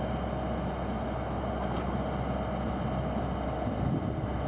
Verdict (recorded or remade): recorded